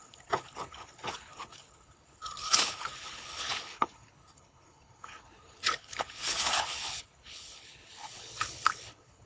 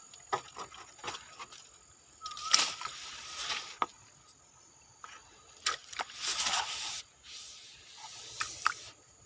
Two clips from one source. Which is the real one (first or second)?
second